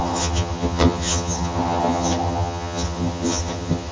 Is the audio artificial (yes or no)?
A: yes